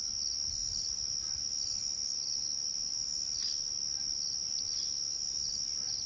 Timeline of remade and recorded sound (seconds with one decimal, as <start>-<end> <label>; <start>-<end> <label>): 0.0-6.1 recorded